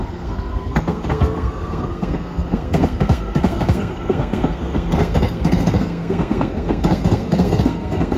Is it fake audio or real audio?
fake